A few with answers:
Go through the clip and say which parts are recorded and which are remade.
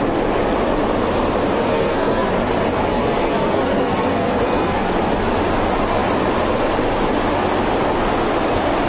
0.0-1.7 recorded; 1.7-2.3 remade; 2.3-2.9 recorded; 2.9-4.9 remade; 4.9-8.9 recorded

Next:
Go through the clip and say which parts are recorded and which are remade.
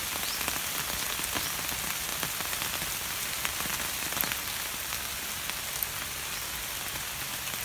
0.0-7.6 recorded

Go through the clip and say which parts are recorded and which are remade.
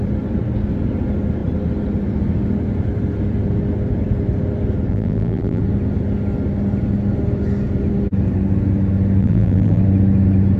0.0-4.9 recorded; 4.9-5.6 remade; 5.6-9.2 recorded; 9.2-9.8 remade; 9.8-10.6 recorded